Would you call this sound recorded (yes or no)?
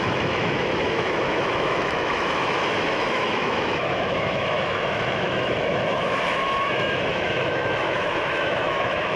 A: no